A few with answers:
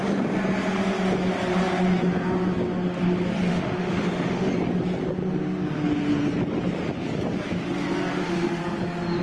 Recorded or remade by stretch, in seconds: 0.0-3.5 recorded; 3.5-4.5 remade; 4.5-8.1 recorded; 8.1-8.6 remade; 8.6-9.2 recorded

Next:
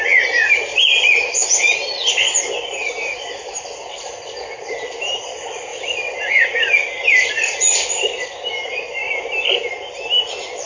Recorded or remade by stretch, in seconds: 0.0-10.7 recorded